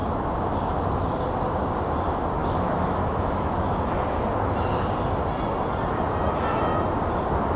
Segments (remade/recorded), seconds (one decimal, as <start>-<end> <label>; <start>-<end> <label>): 0.0-0.9 remade; 0.9-2.4 recorded; 2.4-3.9 remade; 3.9-7.6 recorded